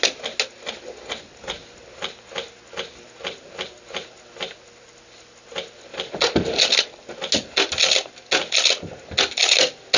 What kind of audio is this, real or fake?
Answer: real